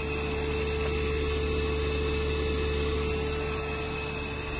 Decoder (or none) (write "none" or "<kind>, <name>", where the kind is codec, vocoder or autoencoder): none